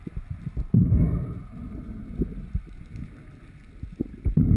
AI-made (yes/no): no